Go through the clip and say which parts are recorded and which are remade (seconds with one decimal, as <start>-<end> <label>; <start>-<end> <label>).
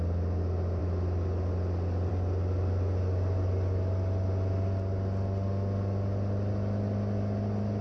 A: 0.0-7.8 recorded